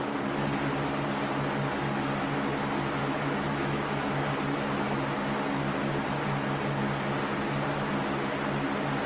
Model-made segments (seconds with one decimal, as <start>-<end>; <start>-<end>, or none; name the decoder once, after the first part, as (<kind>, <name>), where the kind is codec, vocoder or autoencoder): 3.0-4.1 (autoencoder, DAC-VAE)